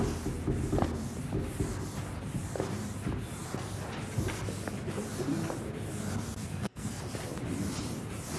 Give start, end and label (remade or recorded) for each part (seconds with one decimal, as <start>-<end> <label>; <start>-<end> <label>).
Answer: 0.0-6.4 recorded; 6.4-7.0 remade; 7.0-8.4 recorded